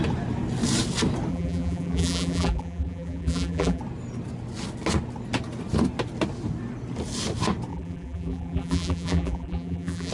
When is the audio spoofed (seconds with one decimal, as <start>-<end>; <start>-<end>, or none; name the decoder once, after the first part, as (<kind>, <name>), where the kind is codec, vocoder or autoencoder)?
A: 1.3-3.8 (vocoder, BigVGAN v2); 7.7-10.1